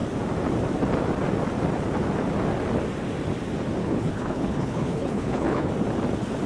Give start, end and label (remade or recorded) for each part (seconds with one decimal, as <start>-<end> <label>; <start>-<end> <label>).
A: 0.0-3.8 recorded; 3.8-5.7 remade; 5.7-6.5 recorded